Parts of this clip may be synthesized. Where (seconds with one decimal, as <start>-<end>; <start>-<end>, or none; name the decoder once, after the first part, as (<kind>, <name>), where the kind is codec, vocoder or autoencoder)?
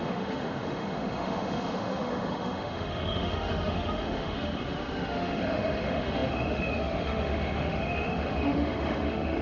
0.0-9.4 (autoencoder, DAC-VAE)